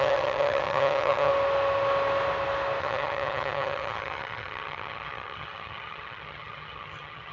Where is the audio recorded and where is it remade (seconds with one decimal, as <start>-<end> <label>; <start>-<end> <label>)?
0.0-1.3 remade; 1.3-2.8 recorded; 2.8-7.3 remade